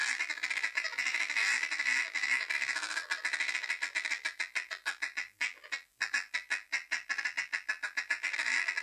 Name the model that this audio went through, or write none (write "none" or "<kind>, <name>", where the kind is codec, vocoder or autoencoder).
vocoder, BigVGAN v2